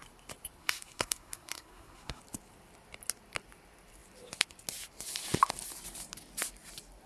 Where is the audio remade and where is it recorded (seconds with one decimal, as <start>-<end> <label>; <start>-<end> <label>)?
0.0-0.6 recorded; 0.6-2.2 remade; 2.2-7.1 recorded